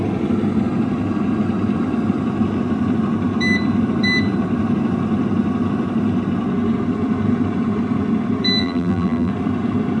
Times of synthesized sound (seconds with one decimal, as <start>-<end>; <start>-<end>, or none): 8.6-9.3